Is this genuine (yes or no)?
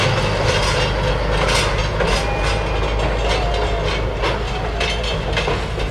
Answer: yes